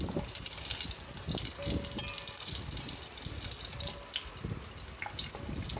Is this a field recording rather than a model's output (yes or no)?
yes